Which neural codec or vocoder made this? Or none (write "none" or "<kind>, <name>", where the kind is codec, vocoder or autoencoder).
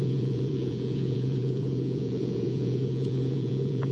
vocoder, Vocos